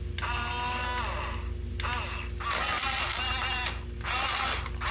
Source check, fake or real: real